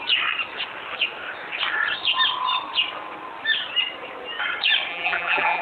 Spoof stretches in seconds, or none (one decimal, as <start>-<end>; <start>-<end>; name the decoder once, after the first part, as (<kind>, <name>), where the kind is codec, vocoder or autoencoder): 4.9-5.6 (vocoder, BigVGAN v2)